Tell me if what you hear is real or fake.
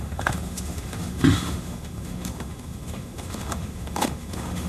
fake